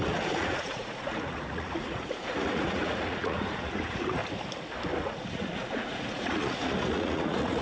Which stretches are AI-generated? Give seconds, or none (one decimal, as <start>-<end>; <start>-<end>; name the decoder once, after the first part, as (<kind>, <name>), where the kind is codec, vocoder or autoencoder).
0.0-4.2 (vocoder, Vocos); 5.0-7.6